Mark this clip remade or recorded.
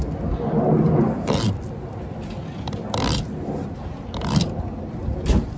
recorded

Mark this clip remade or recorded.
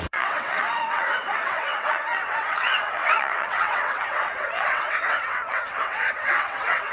remade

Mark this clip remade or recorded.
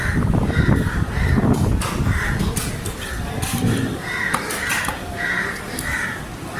remade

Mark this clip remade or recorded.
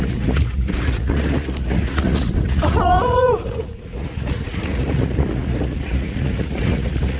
remade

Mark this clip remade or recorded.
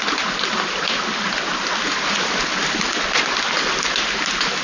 recorded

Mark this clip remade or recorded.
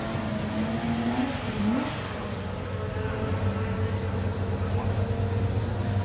recorded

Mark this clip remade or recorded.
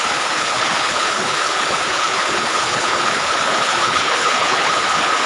remade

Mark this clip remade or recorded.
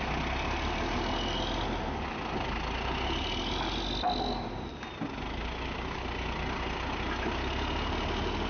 recorded